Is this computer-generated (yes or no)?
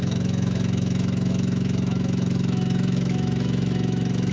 yes